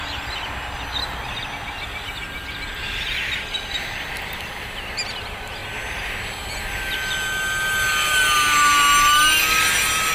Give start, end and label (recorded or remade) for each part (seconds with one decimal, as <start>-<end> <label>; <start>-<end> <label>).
0.0-10.1 recorded